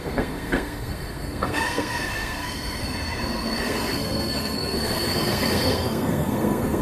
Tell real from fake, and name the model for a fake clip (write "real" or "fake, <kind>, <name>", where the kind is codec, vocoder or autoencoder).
fake, codec, SNAC